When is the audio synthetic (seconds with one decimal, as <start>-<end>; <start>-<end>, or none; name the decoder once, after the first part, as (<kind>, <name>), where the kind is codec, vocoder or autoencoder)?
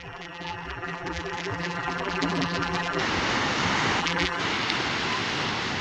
0.0-3.0 (vocoder, BigVGAN v2); 4.0-4.4